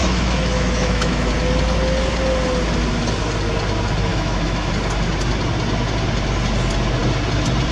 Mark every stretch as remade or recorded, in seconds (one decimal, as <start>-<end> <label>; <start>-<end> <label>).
0.0-1.3 remade; 1.3-4.1 recorded; 4.1-4.7 remade; 4.7-7.7 recorded